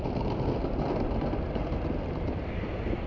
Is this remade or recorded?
recorded